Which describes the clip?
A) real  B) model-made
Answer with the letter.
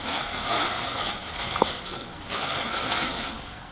B